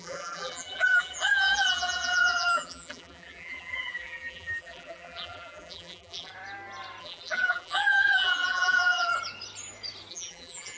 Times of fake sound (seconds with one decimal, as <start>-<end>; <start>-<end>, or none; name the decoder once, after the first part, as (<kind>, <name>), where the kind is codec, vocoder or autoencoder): 0.0-6.3 (vocoder, BigVGAN v2); 7.0-9.1; 10.1-10.8